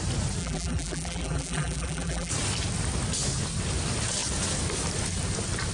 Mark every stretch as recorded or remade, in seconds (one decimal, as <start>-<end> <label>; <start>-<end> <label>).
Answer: 0.0-0.4 recorded; 0.4-2.3 remade; 2.3-5.7 recorded